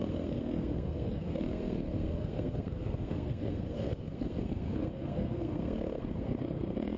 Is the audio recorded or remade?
remade